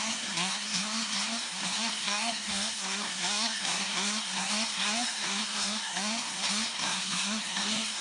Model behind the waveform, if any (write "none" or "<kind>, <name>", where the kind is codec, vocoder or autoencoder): codec, SNAC